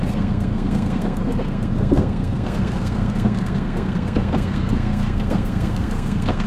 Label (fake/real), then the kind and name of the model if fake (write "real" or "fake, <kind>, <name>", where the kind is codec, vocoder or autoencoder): fake, codec, SNAC